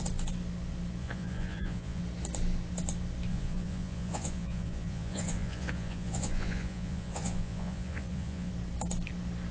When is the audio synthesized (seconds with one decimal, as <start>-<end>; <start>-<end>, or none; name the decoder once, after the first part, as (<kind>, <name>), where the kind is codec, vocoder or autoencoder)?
1.0-2.0 (vocoder, Vocos); 3.3-8.5